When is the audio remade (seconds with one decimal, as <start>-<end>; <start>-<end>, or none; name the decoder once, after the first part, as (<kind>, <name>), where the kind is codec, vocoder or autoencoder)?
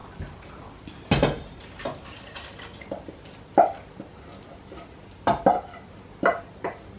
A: none